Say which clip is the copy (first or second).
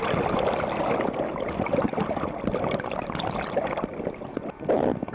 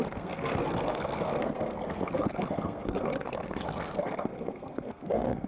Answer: second